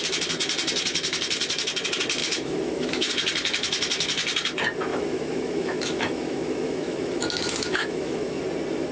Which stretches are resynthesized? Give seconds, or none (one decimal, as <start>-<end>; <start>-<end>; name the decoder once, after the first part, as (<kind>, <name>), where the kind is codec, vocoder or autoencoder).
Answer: 2.2-3.1 (autoencoder, DAC-VAE); 4.9-8.4